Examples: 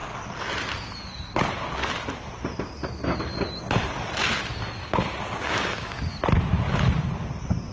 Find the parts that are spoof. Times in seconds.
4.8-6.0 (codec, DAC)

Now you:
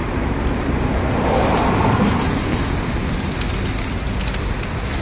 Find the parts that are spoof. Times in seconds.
none

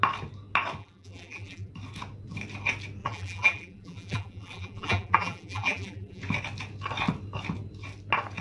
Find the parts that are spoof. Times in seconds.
0.8-1.7 (vocoder, BigVGAN v2); 3.0-6.2

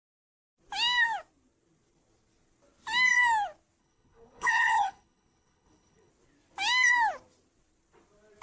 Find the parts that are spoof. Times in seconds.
3.8-6.1 (codec, HILCodec)